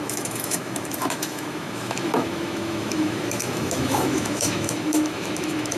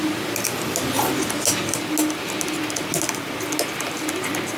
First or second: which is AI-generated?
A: first